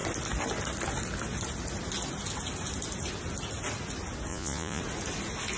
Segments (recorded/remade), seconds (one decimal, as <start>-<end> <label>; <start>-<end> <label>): 0.0-4.3 recorded; 4.3-4.8 remade; 4.8-5.6 recorded